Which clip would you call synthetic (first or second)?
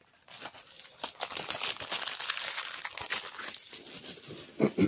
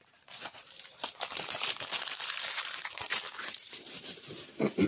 second